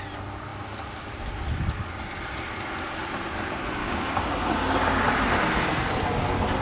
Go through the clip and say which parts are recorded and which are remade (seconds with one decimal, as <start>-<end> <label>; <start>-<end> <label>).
0.0-3.8 recorded; 3.8-5.0 remade; 5.0-6.6 recorded